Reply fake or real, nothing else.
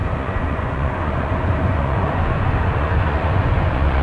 fake